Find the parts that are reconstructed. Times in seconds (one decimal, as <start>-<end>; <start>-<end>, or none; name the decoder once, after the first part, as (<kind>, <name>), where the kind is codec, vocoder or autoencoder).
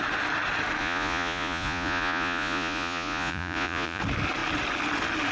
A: 0.8-4.0 (vocoder, Vocos)